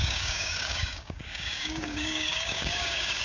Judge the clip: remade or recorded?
remade